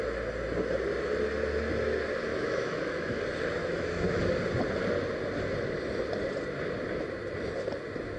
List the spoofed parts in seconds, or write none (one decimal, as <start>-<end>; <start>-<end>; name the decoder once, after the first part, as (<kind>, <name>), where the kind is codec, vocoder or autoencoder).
2.3-3.2 (autoencoder, DAC-VAE); 3.6-4.2

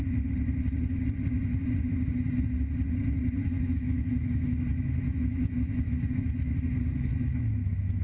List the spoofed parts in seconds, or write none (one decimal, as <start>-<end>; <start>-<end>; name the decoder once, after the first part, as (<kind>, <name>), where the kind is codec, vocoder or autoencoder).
3.4-6.5 (autoencoder, DAC-VAE); 7.1-8.0

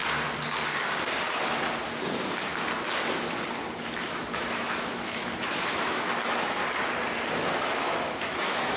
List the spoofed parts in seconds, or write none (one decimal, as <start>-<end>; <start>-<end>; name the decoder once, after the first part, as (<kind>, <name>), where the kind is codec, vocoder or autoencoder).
4.0-6.6 (autoencoder, DAC-VAE); 7.8-8.8

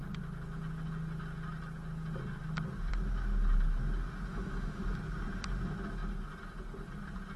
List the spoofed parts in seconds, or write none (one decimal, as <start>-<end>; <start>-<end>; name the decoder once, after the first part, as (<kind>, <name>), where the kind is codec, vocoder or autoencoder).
4.3-4.8 (autoencoder, DAC-VAE)

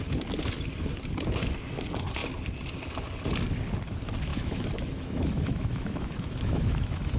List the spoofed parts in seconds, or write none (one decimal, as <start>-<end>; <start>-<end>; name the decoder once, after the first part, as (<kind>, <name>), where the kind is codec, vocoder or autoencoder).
4.3-7.2 (autoencoder, DAC-VAE)

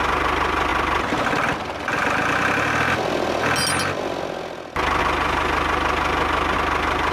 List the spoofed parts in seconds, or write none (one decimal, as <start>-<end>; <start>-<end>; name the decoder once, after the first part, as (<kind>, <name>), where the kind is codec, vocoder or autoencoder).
none

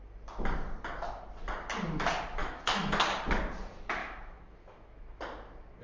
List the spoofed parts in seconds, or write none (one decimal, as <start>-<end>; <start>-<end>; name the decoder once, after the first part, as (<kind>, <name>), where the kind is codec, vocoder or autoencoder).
2.4-3.0 (autoencoder, DAC-VAE); 4.0-5.2

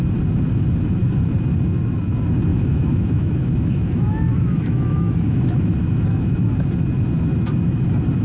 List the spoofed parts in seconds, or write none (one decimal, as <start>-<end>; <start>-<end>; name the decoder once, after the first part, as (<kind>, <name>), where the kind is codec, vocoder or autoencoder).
2.5-6.6 (autoencoder, DAC-VAE)